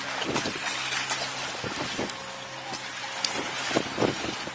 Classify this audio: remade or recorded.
recorded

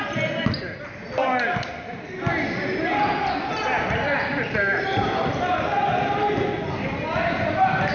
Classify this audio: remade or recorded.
recorded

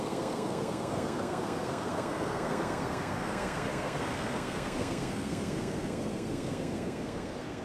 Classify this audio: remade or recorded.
remade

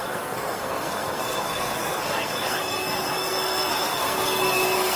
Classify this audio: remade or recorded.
remade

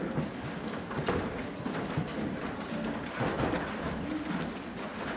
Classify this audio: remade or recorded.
recorded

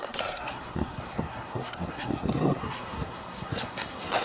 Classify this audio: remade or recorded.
remade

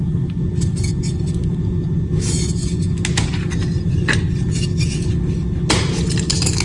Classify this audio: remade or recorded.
recorded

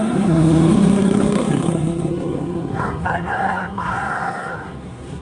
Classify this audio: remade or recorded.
remade